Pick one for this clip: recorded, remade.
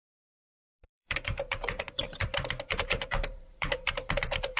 remade